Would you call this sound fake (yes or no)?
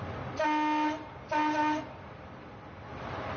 no